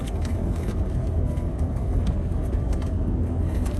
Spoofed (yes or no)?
yes